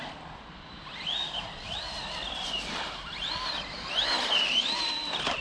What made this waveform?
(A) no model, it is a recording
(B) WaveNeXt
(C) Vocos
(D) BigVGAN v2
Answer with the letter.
D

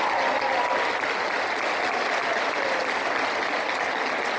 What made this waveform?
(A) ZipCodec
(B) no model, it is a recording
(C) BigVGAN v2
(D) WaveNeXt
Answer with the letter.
B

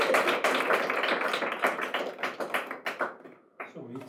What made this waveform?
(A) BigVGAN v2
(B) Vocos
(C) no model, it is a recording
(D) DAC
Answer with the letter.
C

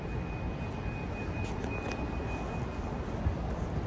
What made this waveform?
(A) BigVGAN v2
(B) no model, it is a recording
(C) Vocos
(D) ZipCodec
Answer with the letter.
B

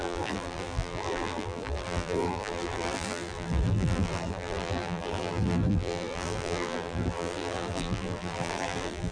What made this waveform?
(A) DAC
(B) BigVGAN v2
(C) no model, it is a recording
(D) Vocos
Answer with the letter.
B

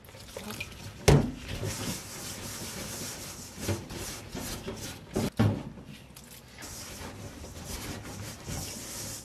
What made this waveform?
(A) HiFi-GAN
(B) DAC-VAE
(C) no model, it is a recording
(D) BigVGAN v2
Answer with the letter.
C